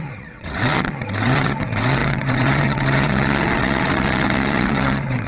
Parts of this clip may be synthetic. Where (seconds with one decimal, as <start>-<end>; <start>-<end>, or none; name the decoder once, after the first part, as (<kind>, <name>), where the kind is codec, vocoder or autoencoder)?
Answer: 0.0-5.3 (vocoder, WaveNeXt)

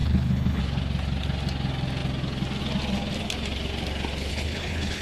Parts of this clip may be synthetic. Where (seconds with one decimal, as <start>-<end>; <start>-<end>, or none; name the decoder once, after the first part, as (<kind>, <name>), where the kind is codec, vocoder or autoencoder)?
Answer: 0.0-0.6 (codec, HILCodec); 4.3-5.0

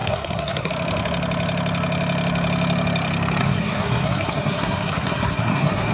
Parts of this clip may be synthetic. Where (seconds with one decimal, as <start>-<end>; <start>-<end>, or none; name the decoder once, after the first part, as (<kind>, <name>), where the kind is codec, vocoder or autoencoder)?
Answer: 0.0-0.7 (codec, SNAC); 3.4-5.9